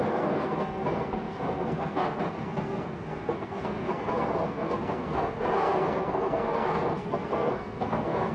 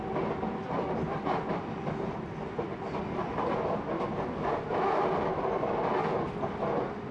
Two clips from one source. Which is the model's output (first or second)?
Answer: first